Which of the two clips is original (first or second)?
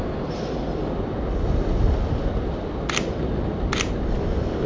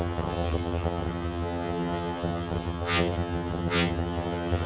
first